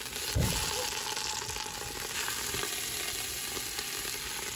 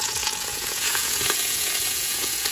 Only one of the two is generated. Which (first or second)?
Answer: second